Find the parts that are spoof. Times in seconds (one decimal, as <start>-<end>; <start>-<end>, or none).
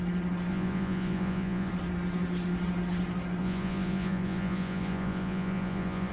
0.5-1.7; 3.4-6.1